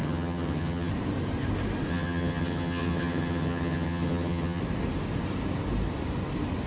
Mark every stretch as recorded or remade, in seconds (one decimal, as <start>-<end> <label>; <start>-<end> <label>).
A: 0.0-0.9 remade; 0.9-1.9 recorded; 1.9-4.6 remade; 4.6-6.7 recorded